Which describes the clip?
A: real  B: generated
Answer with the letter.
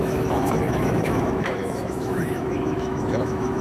B